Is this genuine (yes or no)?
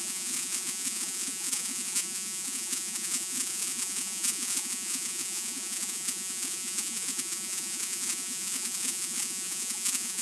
no